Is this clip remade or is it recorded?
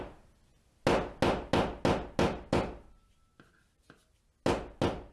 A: recorded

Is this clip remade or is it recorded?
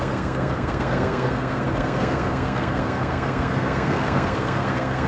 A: remade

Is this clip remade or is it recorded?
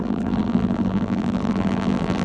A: remade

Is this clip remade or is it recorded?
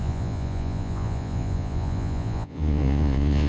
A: remade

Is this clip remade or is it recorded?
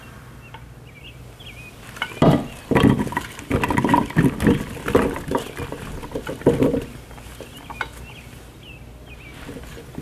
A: recorded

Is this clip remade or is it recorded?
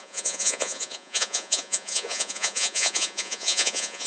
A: remade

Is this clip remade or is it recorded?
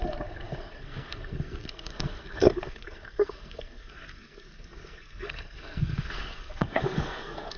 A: remade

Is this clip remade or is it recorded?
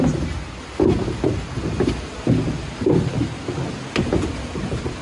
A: recorded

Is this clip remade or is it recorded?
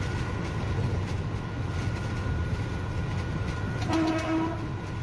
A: recorded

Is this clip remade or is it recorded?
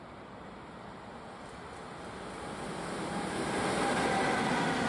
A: recorded